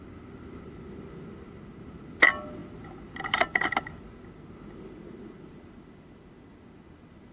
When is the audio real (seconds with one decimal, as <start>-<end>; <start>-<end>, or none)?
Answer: 0.0-7.3